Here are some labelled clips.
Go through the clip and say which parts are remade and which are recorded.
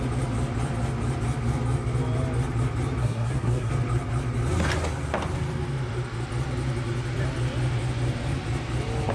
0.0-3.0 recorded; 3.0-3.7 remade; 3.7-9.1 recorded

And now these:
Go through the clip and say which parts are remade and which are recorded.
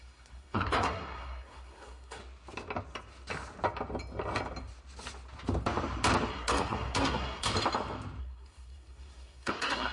0.0-2.2 remade; 2.2-6.3 recorded; 6.3-7.5 remade; 7.5-8.2 recorded; 8.2-9.9 remade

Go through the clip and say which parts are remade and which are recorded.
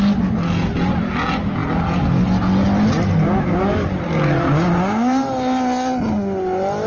0.0-6.9 recorded